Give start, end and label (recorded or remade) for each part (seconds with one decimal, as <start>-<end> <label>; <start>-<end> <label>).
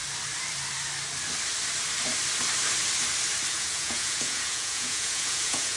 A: 0.0-3.5 recorded; 3.5-5.8 remade